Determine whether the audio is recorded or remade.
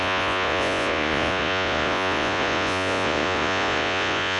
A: remade